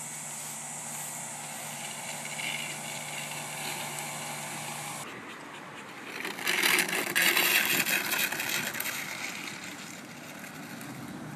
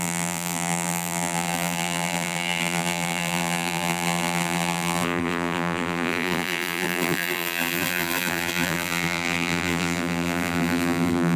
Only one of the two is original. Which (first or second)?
first